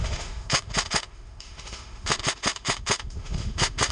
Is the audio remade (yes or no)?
yes